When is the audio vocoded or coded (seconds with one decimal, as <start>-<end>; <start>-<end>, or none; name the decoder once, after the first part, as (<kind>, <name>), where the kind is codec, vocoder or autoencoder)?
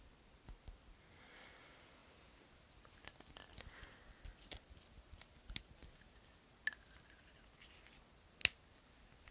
none